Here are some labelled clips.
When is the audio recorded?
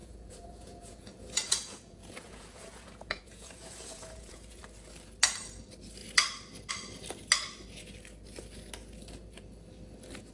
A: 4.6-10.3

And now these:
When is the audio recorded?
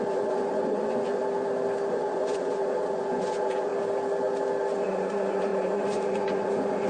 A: 1.2-1.9; 3.7-4.8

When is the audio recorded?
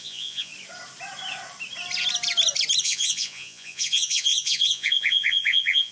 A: 0.5-2.8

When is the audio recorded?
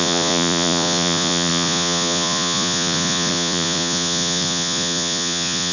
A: none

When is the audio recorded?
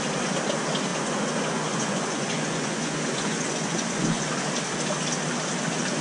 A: 0.0-0.9; 4.3-6.0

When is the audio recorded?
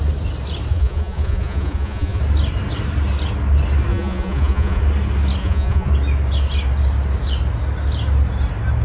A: 0.0-0.7; 2.2-3.9; 4.8-5.4; 5.9-8.8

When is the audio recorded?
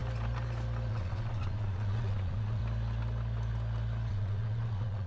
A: 0.0-0.9; 2.6-4.1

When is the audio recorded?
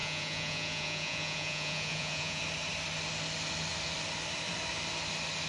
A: 2.4-5.5